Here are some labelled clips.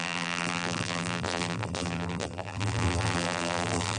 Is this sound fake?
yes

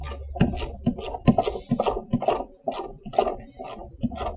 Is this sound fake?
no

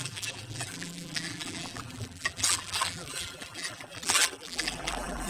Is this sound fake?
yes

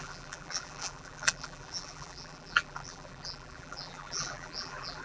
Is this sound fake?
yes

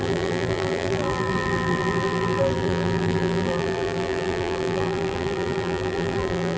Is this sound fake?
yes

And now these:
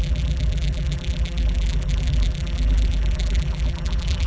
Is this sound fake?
yes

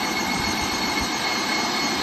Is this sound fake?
no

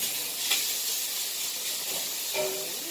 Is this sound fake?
no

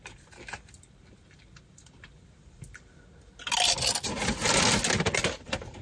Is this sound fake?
no